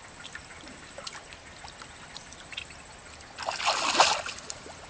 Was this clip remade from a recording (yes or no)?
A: no